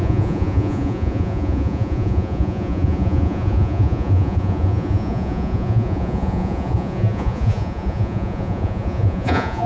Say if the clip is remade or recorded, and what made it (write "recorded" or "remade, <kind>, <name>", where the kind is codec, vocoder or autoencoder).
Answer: remade, vocoder, Vocos